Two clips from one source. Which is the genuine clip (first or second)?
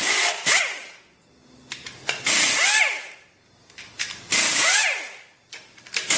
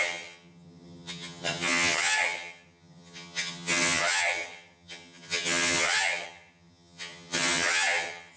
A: first